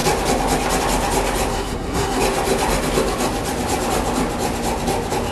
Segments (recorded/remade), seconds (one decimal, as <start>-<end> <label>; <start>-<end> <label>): 0.0-1.5 recorded; 1.5-2.2 remade; 2.2-5.3 recorded